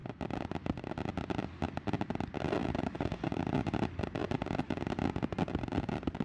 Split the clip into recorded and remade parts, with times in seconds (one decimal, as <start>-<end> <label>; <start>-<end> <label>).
0.0-2.6 recorded; 2.6-3.4 remade; 3.4-6.2 recorded

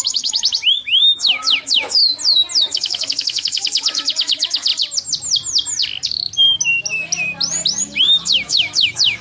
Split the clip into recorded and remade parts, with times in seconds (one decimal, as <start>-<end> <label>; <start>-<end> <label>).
0.0-2.0 remade; 2.0-2.6 recorded; 2.6-4.7 remade; 4.7-8.0 recorded; 8.0-9.2 remade

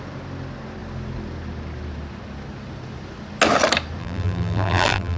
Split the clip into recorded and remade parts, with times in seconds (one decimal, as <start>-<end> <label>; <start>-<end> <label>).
0.0-4.0 recorded; 4.0-5.2 remade